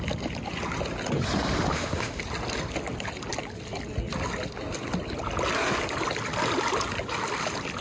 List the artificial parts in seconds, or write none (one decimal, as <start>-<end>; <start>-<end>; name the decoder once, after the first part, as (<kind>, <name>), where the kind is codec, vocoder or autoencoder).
1.7-2.2 (autoencoder, DAC-VAE)